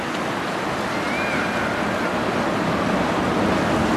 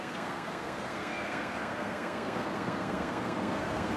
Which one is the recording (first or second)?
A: first